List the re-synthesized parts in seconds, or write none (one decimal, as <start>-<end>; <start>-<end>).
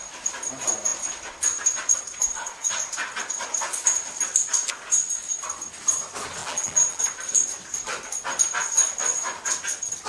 6.4-7.0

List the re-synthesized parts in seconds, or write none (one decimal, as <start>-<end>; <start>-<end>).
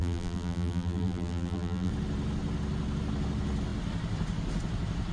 0.0-1.9